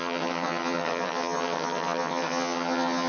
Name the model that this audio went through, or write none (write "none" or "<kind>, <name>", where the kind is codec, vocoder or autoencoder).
vocoder, HiFi-GAN